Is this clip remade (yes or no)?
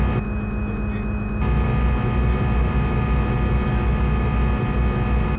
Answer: no